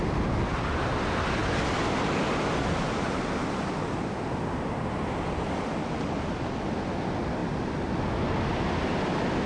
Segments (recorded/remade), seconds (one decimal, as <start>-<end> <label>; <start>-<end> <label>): 0.0-9.5 recorded